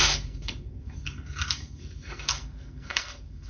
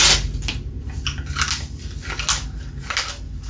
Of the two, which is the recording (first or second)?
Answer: second